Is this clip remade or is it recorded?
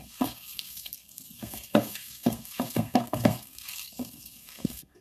remade